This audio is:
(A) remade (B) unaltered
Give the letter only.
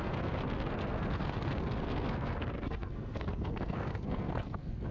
A